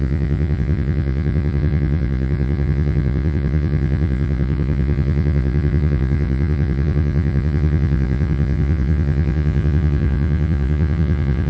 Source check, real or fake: fake